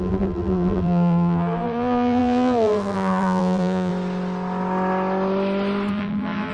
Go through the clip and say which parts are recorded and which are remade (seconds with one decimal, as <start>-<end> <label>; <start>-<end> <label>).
0.0-3.9 remade; 3.9-5.9 recorded; 5.9-6.5 remade